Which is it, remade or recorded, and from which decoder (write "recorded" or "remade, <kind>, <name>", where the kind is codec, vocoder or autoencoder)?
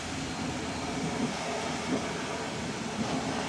recorded